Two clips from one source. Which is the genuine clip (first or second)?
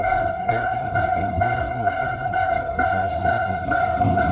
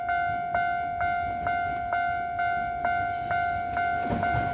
second